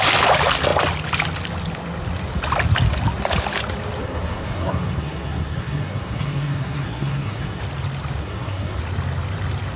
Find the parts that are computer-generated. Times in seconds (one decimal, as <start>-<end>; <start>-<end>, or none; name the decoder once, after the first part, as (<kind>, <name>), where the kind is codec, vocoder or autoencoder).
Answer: 4.0-7.6 (codec, SNAC); 8.2-8.8

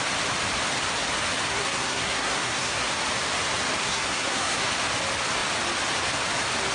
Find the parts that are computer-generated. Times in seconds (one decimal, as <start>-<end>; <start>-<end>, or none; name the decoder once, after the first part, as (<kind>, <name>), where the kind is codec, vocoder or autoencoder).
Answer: 1.5-2.9 (codec, SNAC); 3.8-4.7

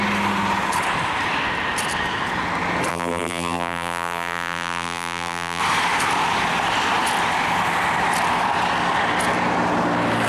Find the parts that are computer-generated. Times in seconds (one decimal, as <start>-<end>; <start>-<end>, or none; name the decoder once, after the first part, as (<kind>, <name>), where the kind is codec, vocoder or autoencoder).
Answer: 2.9-5.6 (vocoder, BigVGAN v2)

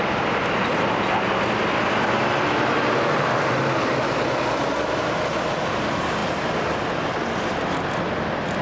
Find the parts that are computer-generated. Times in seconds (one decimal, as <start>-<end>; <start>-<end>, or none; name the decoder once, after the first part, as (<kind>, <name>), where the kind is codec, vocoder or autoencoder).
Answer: none